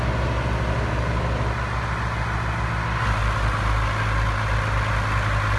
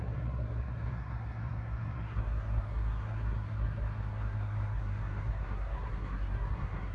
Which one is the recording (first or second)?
first